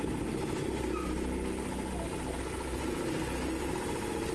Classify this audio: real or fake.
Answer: real